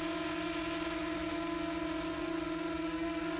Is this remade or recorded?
recorded